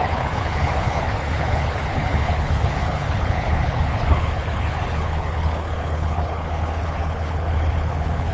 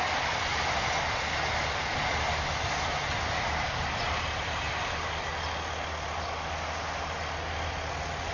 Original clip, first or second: second